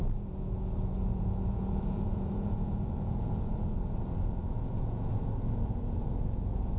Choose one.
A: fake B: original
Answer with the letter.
A